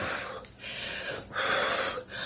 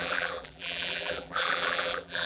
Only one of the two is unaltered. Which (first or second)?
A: first